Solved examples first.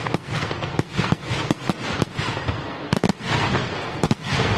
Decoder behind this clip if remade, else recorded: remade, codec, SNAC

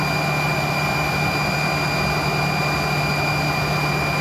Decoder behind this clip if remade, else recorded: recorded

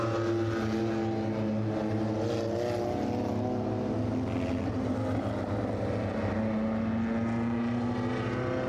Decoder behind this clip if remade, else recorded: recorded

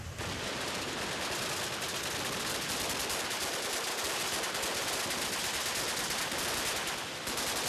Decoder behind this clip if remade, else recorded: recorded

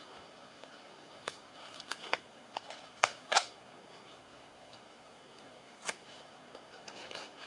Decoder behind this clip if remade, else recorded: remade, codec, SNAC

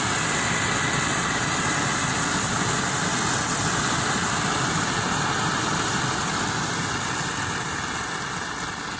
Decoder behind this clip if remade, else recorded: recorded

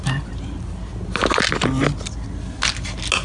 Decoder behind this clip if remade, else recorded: recorded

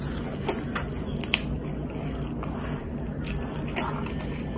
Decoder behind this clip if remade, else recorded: recorded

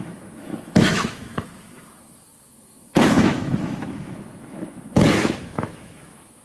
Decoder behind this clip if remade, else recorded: remade, autoencoder, DAC-VAE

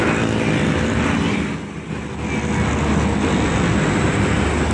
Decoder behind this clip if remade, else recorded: recorded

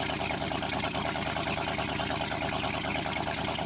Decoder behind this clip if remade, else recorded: recorded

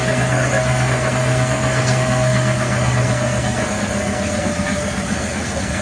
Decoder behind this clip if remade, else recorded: remade, codec, SNAC